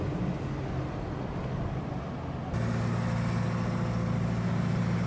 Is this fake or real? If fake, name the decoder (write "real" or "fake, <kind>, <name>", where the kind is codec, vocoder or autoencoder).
real